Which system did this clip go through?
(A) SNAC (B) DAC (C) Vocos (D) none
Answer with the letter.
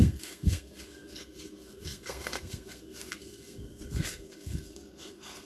A